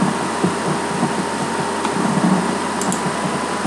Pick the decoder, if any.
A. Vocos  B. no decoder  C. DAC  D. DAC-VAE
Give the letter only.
B